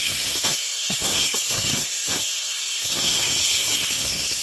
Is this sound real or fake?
fake